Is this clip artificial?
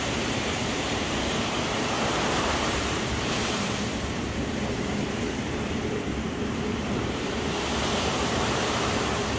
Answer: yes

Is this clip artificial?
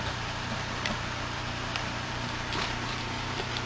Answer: yes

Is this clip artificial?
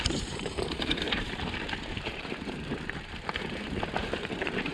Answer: yes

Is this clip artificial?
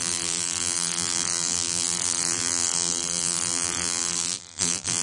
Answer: yes